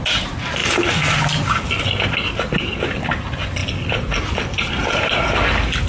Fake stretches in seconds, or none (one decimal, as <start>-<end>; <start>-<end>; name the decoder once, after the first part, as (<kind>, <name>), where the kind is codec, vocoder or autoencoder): none